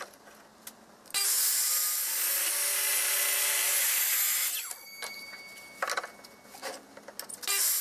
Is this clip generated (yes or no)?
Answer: no